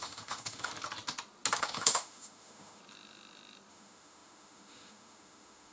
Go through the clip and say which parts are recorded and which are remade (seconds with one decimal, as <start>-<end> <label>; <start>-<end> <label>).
0.0-0.7 remade; 0.7-1.6 recorded; 1.6-2.8 remade; 2.8-3.7 recorded; 3.7-5.7 remade